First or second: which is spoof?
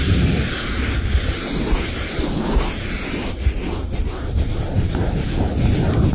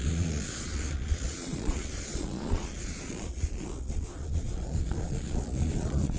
second